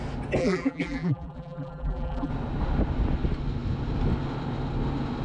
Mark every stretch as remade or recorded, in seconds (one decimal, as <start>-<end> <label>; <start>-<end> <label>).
0.0-0.4 recorded; 0.4-2.3 remade; 2.3-5.2 recorded